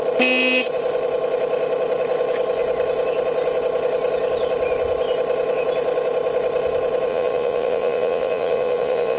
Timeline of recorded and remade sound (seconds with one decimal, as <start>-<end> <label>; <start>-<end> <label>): 0.0-7.1 recorded; 7.1-9.2 remade